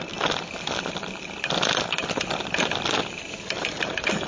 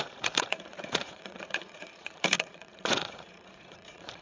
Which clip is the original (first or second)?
first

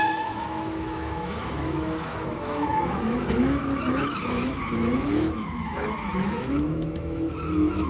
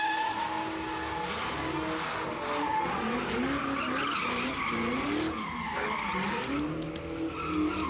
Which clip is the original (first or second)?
second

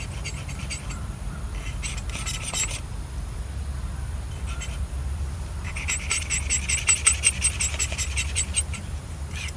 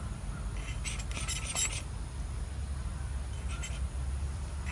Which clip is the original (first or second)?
second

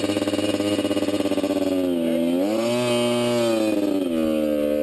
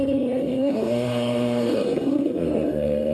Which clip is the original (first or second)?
first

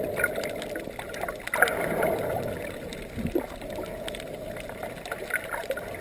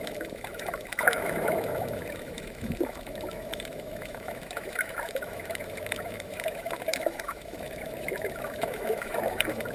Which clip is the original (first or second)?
first